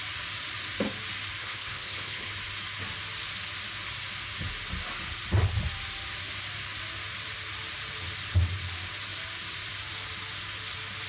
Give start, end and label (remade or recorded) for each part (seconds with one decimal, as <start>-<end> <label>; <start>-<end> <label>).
0.0-1.4 recorded; 1.4-2.3 remade; 2.3-11.1 recorded